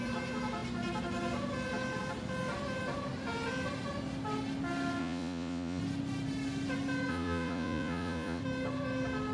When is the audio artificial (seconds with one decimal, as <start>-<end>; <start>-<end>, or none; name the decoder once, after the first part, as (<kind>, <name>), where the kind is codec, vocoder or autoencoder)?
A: 5.0-5.8 (vocoder, Vocos); 7.1-8.4